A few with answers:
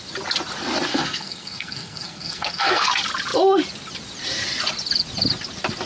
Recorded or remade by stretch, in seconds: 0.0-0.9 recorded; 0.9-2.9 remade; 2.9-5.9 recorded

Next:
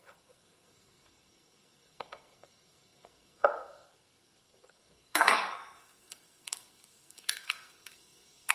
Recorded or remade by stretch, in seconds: 0.0-8.5 remade

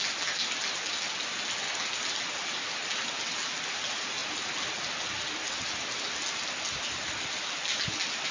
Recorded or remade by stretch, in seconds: 0.0-8.3 recorded

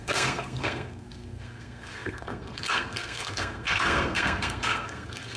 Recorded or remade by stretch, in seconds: 0.0-5.4 remade

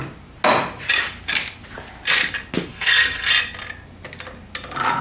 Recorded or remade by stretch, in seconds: 0.0-2.7 recorded; 2.7-3.3 remade; 3.3-5.0 recorded

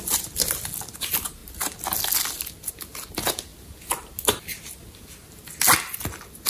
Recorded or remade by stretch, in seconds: 0.0-6.5 recorded